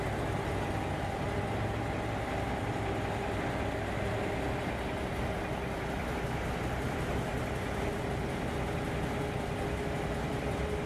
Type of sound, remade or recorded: recorded